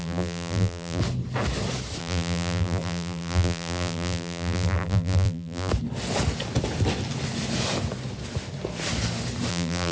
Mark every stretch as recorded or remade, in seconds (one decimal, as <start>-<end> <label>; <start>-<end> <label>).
0.0-1.0 remade; 1.0-2.0 recorded; 2.0-5.7 remade; 5.7-9.5 recorded; 9.5-9.9 remade